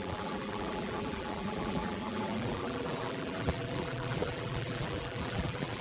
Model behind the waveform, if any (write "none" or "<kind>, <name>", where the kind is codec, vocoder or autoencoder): vocoder, BigVGAN v2